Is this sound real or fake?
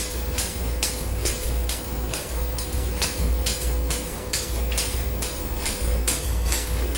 fake